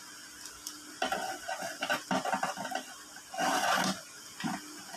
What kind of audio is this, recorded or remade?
recorded